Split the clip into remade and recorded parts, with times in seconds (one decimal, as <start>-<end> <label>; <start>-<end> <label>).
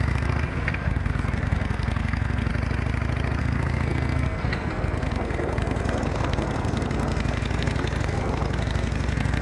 0.0-2.5 remade; 2.5-3.4 recorded; 3.4-9.4 remade